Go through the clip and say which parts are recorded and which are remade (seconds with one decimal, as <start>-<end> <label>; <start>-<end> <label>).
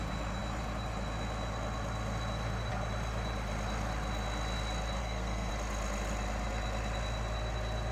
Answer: 0.0-5.0 recorded; 5.0-5.5 remade; 5.5-7.9 recorded